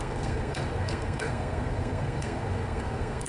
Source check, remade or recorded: remade